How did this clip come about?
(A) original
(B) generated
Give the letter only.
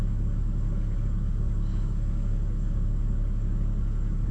B